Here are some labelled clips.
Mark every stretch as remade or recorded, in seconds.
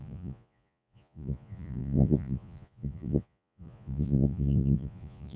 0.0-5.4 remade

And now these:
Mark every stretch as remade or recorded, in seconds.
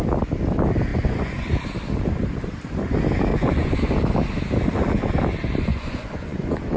0.0-0.9 recorded; 0.9-1.5 remade; 1.5-3.3 recorded; 3.3-3.9 remade; 3.9-5.7 recorded; 5.7-6.8 remade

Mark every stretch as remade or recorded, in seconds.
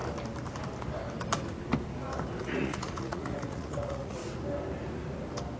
0.0-2.4 recorded; 2.4-4.2 remade; 4.2-5.6 recorded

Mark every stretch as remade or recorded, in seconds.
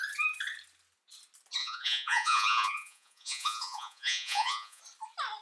0.0-1.6 recorded; 1.6-4.8 remade; 4.8-5.4 recorded